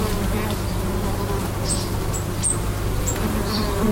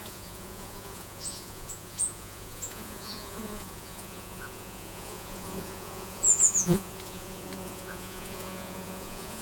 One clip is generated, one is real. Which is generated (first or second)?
second